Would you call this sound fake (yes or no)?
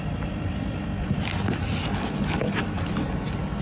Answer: no